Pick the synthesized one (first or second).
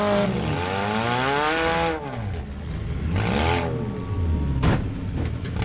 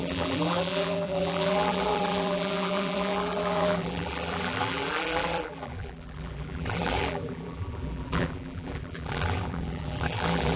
second